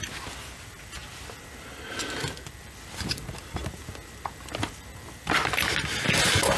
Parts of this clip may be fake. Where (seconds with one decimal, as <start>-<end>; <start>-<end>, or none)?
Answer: none